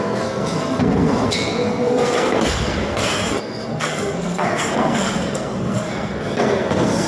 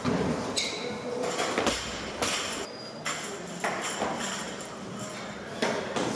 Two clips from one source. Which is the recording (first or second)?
second